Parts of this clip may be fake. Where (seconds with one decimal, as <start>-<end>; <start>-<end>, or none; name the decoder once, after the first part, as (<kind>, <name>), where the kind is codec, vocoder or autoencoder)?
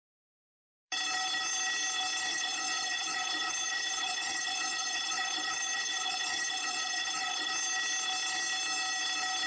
2.3-7.5 (vocoder, HiFi-GAN)